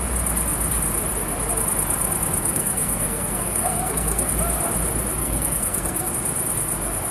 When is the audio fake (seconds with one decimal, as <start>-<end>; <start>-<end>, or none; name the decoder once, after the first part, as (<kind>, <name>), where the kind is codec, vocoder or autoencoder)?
2.4-4.3 (codec, SNAC); 5.2-6.1